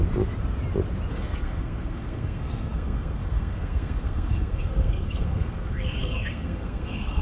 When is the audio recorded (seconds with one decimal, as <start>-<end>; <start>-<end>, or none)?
0.0-1.1

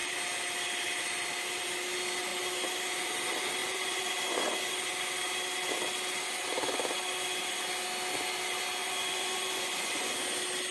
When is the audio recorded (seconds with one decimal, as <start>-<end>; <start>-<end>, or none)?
0.0-3.6; 4.7-8.8; 10.1-10.7

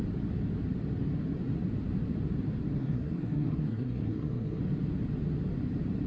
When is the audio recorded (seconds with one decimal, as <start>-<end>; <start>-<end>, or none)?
0.0-2.8; 4.6-6.1

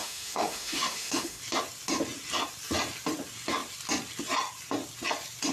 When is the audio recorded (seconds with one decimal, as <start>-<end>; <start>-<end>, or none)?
1.4-5.5

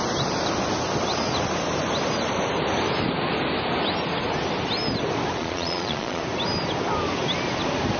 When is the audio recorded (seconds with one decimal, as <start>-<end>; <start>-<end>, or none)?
0.0-5.4; 6.2-8.0

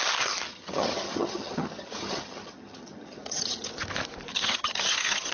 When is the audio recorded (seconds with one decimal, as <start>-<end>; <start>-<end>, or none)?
0.0-0.5; 3.7-4.3

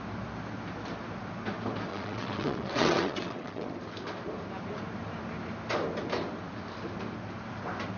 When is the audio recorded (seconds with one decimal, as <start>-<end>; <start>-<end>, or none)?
0.0-1.9; 3.7-8.0